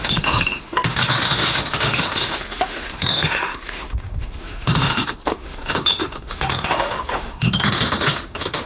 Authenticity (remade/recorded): remade